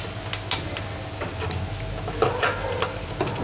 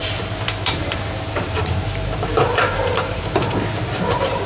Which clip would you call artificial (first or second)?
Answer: second